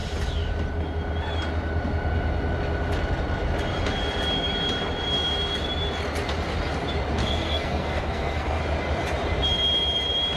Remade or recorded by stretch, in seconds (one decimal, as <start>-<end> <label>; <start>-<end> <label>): 0.0-7.2 recorded; 7.2-8.6 remade; 8.6-10.4 recorded